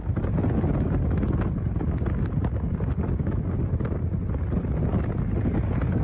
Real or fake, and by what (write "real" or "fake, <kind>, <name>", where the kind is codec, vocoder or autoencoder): real